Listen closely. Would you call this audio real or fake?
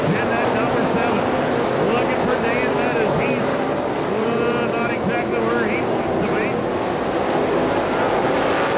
real